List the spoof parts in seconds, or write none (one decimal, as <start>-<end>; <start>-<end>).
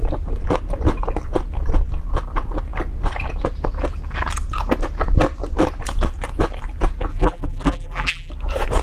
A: 7.1-8.3